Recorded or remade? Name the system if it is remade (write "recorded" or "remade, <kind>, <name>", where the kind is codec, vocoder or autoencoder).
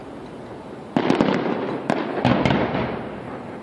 recorded